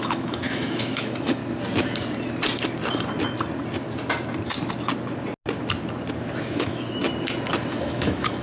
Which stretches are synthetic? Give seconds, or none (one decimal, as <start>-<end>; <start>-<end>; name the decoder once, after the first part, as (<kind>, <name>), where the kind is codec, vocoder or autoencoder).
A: 0.0-1.4 (autoencoder, DAC-VAE); 6.4-7.0; 7.8-8.4